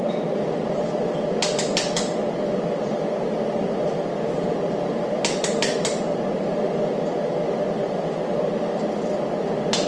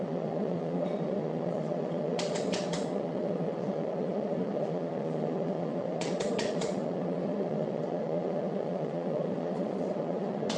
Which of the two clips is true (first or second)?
first